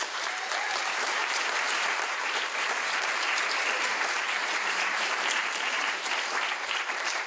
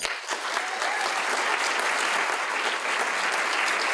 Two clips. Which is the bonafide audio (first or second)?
second